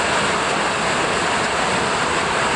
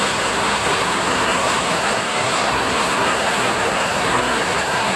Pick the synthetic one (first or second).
second